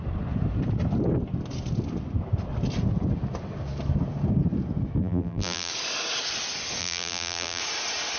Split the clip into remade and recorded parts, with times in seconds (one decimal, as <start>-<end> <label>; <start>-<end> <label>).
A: 0.0-5.0 recorded; 5.0-5.7 remade; 5.7-6.8 recorded; 6.8-7.6 remade; 7.6-8.2 recorded